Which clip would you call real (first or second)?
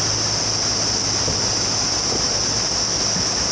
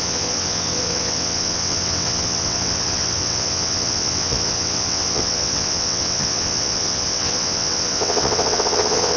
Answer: first